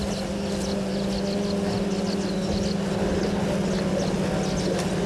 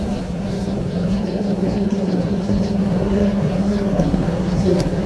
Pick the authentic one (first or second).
first